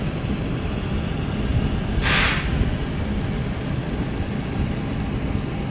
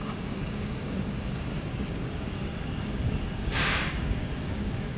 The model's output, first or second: second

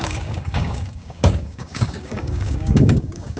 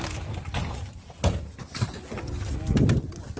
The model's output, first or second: first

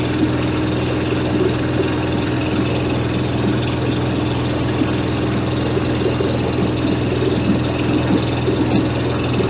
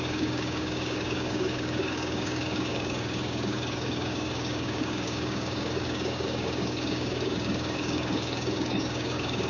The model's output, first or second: second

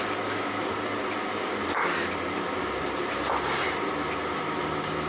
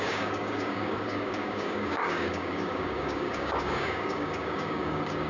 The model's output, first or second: second